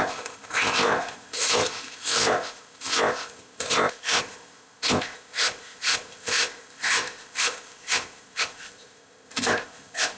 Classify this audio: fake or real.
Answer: fake